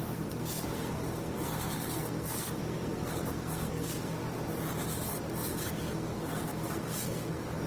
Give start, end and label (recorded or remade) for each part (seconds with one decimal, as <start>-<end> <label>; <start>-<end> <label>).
0.0-4.2 remade; 4.2-5.4 recorded; 5.4-7.7 remade